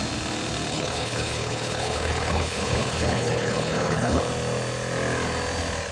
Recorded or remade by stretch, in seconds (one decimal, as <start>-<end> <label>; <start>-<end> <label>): 0.0-0.7 recorded; 0.7-4.2 remade; 4.2-5.9 recorded